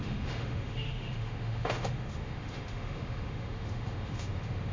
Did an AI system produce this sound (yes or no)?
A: yes